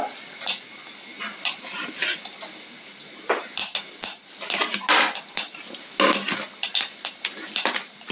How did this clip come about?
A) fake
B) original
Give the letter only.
B